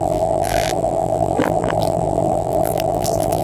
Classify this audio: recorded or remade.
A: remade